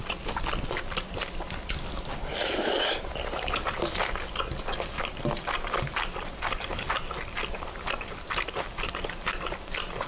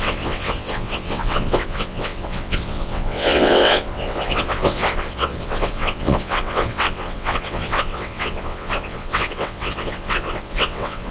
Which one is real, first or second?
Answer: first